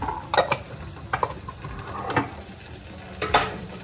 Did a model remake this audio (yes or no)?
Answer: no